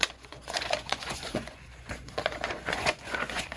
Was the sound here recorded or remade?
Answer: remade